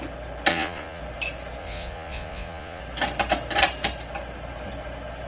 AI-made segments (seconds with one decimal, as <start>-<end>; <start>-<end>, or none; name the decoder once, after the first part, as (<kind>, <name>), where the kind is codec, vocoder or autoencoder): 0.5-1.0 (vocoder, Vocos); 1.6-2.8